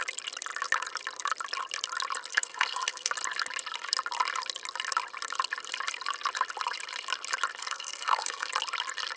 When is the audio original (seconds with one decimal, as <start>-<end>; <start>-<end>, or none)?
0.0-2.3; 3.1-7.6; 8.5-9.2